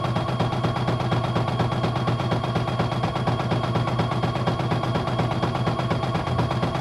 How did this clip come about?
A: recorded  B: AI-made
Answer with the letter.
A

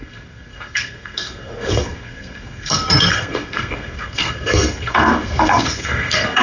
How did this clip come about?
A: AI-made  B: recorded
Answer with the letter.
A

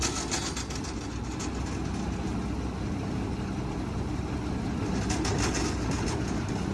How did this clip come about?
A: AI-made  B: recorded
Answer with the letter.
B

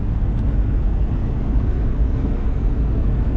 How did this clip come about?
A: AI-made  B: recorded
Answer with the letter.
A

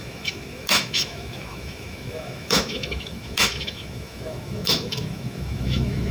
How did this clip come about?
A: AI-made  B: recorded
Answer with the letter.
A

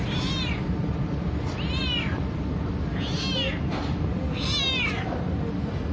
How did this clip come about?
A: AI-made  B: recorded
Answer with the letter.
B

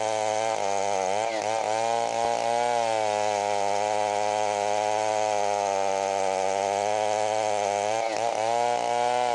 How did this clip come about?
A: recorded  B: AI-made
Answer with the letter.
A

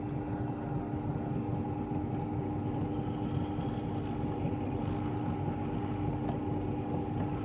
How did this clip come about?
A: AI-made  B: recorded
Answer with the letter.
B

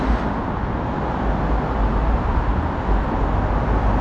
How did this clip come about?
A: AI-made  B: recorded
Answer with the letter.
B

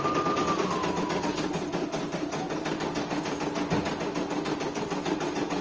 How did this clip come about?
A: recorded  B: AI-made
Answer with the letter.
A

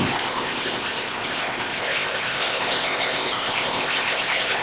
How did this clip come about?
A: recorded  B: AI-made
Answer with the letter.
B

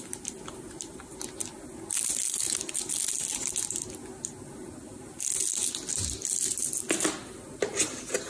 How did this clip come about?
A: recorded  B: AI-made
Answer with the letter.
A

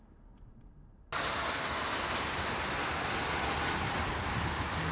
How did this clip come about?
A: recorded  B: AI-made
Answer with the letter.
A